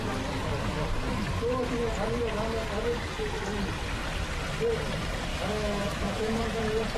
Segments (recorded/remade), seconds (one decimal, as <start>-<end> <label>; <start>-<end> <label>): 0.0-5.3 recorded; 5.3-6.6 remade; 6.6-7.0 recorded